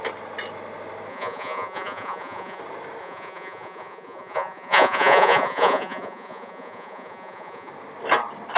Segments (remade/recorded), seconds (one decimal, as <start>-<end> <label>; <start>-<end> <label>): 0.0-1.1 recorded; 1.1-2.6 remade; 2.6-3.0 recorded; 3.0-7.7 remade; 7.7-8.6 recorded